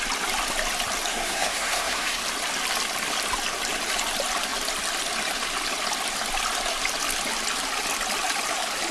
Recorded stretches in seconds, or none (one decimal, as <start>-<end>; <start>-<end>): 0.0-1.1; 2.2-8.9